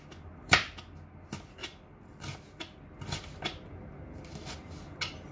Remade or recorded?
recorded